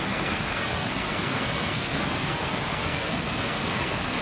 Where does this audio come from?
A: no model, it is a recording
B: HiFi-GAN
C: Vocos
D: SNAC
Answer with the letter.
D